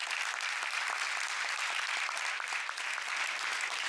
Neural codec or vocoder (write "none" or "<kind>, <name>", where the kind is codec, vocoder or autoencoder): none